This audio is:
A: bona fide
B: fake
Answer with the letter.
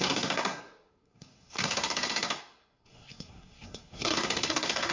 B